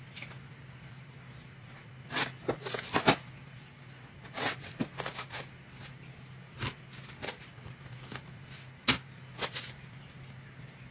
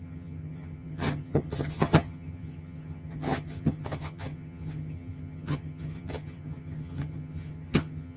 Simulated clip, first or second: second